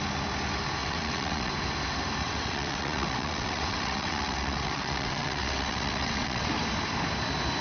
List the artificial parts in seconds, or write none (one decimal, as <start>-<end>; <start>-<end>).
0.8-1.5; 2.2-6.5

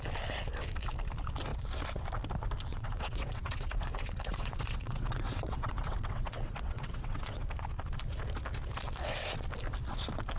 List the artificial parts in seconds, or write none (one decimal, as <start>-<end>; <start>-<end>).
2.7-7.4

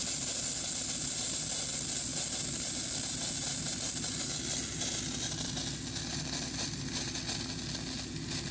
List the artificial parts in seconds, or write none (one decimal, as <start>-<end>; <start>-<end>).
none

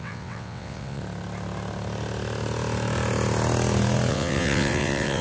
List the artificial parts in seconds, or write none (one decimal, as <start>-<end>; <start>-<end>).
0.0-1.0; 4.1-5.2

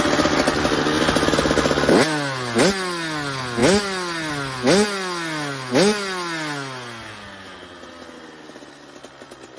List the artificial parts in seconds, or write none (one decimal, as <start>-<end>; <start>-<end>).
none